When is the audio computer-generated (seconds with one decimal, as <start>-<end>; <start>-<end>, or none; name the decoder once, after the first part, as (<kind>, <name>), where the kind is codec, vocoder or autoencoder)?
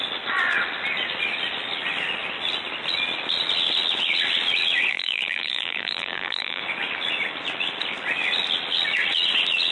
4.9-6.6 (vocoder, BigVGAN v2)